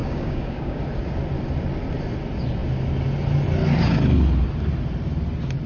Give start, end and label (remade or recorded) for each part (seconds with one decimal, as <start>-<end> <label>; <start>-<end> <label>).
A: 0.0-0.8 remade; 0.8-5.7 recorded